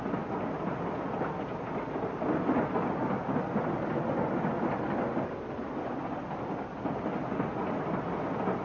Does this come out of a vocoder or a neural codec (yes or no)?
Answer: no